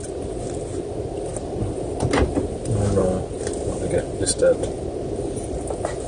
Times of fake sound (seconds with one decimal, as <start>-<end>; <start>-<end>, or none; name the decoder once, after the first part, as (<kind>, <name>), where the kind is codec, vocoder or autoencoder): none